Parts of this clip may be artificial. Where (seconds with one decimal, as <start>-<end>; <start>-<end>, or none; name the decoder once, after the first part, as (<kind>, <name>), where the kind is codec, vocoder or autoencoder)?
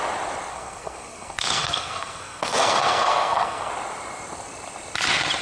0.5-3.7 (codec, SNAC)